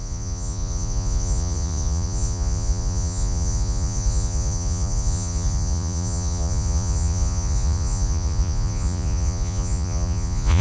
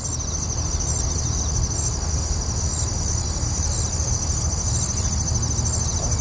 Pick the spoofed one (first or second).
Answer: first